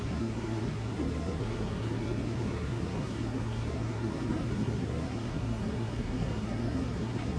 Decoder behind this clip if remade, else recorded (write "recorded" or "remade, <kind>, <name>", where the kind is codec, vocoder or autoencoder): remade, codec, SNAC